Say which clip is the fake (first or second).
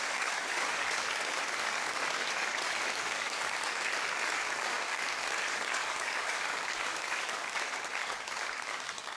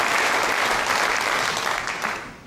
first